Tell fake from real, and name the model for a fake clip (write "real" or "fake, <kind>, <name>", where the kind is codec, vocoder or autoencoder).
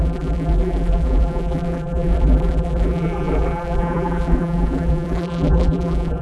fake, vocoder, BigVGAN v2